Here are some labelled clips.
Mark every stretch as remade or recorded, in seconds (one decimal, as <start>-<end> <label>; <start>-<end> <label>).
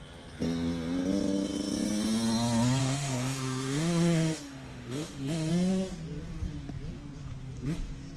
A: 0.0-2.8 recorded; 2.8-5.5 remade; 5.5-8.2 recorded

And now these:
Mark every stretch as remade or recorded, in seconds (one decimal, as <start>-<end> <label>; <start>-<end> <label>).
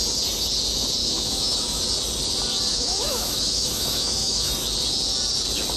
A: 0.0-1.0 recorded; 1.0-1.8 remade; 1.8-2.7 recorded; 2.7-4.5 remade; 4.5-5.8 recorded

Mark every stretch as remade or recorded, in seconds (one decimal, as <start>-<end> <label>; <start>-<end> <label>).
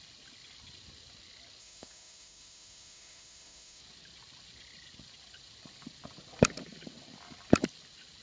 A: 0.0-1.6 recorded; 1.6-3.8 remade; 3.8-8.2 recorded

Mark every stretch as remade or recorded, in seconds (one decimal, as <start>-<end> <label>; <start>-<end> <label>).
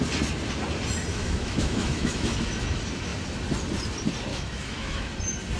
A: 0.0-1.1 recorded; 1.1-2.5 remade; 2.5-4.3 recorded; 4.3-5.1 remade; 5.1-5.6 recorded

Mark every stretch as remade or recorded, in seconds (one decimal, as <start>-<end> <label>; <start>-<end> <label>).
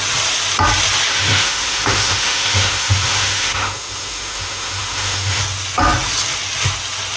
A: 0.0-1.1 recorded; 1.1-5.4 remade; 5.4-7.2 recorded